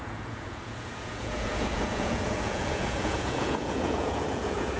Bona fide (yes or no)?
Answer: no